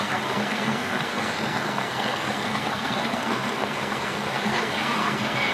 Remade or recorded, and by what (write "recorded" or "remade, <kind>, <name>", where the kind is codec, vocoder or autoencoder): remade, codec, SNAC